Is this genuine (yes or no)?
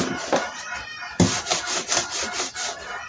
yes